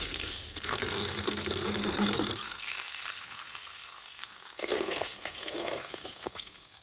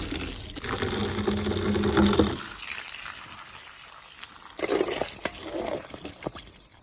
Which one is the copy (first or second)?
first